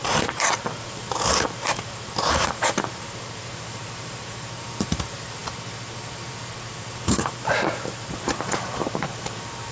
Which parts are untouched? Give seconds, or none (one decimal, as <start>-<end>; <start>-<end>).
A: none